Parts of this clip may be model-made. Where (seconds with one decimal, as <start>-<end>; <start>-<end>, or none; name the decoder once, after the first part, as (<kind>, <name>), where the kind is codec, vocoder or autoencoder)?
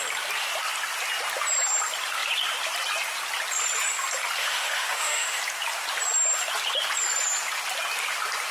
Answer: 4.4-5.4 (autoencoder, DAC-VAE)